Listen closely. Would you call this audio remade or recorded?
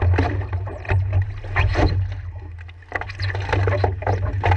recorded